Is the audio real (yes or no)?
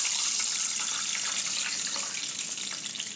yes